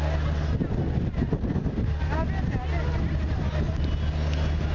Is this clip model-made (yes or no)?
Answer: no